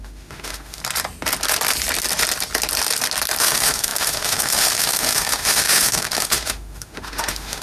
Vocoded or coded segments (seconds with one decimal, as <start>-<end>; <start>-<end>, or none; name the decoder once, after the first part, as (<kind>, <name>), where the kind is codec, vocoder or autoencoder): 0.0-0.8 (autoencoder, DAC-VAE); 3.4-7.6